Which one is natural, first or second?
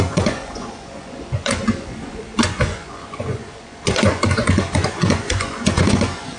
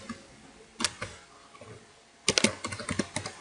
second